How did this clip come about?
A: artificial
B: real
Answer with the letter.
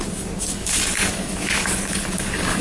A